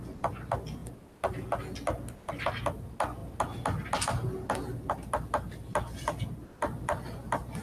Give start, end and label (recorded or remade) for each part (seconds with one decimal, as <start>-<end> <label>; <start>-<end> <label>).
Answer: 0.0-7.6 recorded